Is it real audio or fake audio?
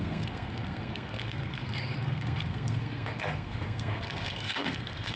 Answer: fake